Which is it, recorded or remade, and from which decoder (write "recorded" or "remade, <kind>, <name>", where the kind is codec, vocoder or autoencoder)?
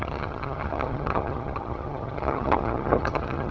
remade, vocoder, HiFi-GAN